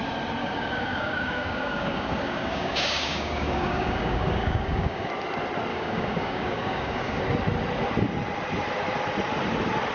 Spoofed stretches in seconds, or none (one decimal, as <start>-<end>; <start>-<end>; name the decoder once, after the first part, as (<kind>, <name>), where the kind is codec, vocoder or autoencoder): 0.4-5.1 (codec, DAC); 5.7-7.2